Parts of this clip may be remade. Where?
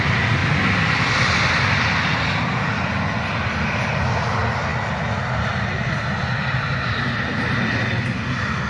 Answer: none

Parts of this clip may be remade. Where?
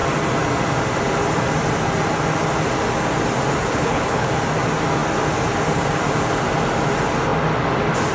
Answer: 3.7-4.3 (codec, HILCodec)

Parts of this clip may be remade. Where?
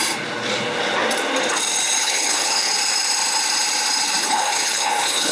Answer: 2.0-2.7 (codec, HILCodec); 4.2-5.3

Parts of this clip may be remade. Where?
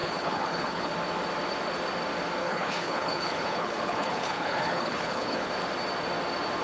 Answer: 0.0-0.9 (codec, HILCodec); 2.4-5.5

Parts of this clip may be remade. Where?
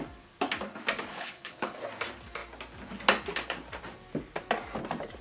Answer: 1.1-1.8 (codec, HILCodec)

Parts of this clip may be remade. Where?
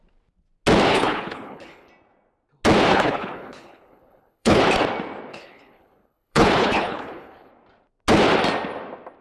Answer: 0.9-1.9 (codec, HILCodec); 2.9-4.6; 5.3-7.5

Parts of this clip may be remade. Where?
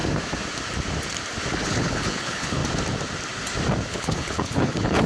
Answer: 1.5-2.6 (codec, HILCodec); 3.9-5.1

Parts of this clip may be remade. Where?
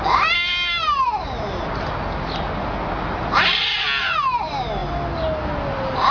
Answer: none